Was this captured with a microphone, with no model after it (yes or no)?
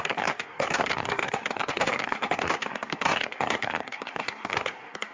no